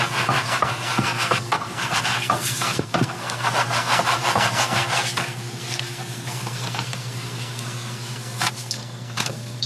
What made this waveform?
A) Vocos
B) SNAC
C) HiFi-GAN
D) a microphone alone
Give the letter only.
B